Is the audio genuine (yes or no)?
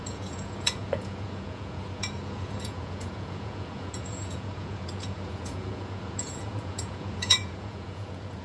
no